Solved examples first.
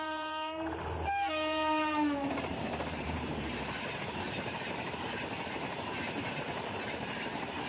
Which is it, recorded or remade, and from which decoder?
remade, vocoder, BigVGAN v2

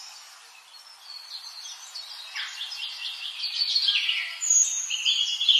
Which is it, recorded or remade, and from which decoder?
recorded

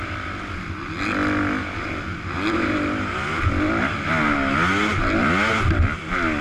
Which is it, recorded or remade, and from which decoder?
recorded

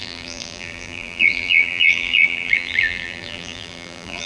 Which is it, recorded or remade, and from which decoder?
remade, vocoder, BigVGAN v2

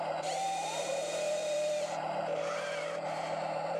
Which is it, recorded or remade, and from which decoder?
remade, vocoder, BigVGAN v2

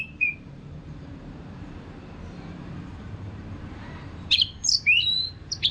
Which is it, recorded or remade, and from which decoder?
remade, vocoder, BigVGAN v2